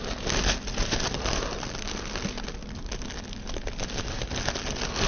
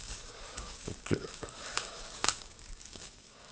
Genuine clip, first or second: first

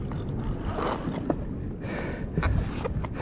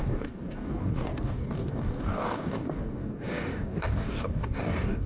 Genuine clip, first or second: first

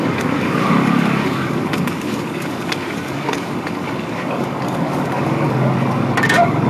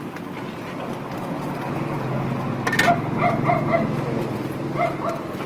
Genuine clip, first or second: second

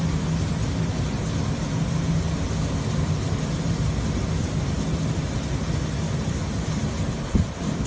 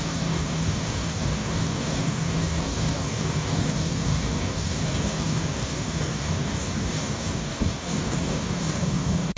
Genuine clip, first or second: first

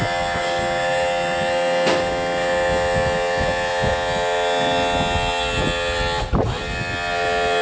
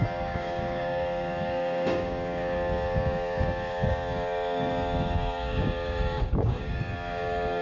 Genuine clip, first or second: first